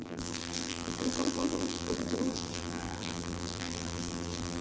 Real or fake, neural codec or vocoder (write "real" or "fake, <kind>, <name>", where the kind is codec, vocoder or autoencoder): fake, vocoder, BigVGAN v2